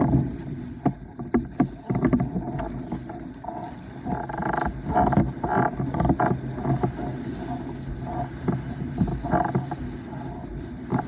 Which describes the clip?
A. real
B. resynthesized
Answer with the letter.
A